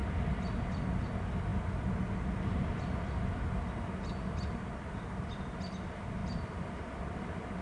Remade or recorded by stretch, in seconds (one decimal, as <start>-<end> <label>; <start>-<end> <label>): 0.0-7.6 recorded